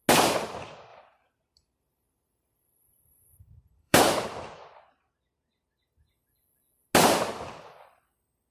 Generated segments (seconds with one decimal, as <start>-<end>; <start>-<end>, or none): 0.9-4.0